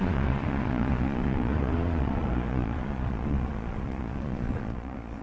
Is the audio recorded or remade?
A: remade